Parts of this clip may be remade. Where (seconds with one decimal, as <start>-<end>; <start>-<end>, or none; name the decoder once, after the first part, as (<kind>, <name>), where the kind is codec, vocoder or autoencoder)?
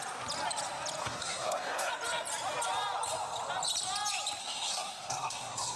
1.0-1.9 (codec, SNAC); 4.4-5.8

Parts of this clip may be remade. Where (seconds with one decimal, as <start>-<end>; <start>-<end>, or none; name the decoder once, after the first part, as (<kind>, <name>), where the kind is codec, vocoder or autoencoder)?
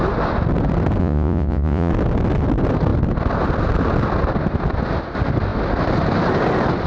1.0-1.9 (vocoder, Vocos)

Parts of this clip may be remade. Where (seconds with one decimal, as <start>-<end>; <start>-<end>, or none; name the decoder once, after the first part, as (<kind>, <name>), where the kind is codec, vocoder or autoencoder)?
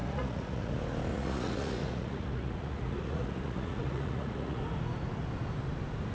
0.0-0.7 (vocoder, Vocos); 1.1-4.6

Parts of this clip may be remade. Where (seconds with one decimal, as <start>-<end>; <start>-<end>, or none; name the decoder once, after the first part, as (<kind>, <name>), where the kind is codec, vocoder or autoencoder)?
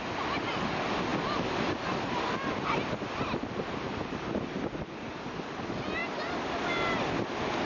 none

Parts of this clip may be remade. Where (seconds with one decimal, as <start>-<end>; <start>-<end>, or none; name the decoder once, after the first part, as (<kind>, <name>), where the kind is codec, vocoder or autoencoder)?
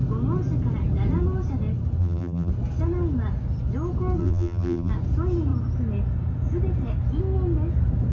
2.0-2.5 (vocoder, BigVGAN v2); 4.2-4.9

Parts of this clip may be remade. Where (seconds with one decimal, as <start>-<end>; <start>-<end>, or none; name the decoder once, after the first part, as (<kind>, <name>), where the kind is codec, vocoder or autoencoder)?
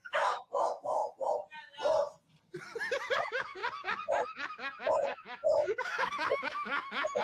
0.0-1.0 (autoencoder, DAC-VAE); 3.2-3.6; 4.8-7.2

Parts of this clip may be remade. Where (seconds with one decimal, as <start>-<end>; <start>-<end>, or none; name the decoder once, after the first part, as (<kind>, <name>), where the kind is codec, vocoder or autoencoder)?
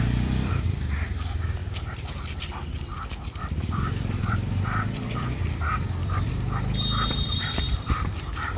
0.0-1.6 (vocoder, BigVGAN v2); 2.2-8.6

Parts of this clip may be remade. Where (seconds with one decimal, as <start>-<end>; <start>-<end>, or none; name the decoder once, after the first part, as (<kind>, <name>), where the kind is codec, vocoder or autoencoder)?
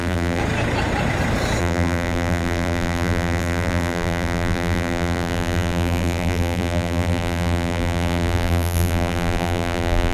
0.0-0.4 (vocoder, BigVGAN v2); 1.6-10.1